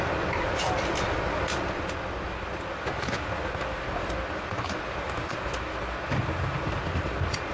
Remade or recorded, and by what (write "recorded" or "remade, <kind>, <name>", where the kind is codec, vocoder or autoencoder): recorded